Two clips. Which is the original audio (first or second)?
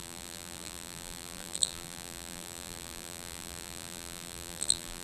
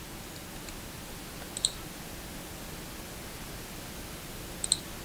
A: second